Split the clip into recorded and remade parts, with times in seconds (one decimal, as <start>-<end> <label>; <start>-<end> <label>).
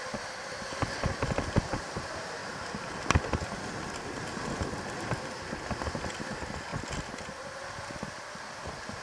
0.0-9.0 recorded